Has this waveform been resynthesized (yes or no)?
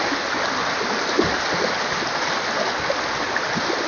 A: no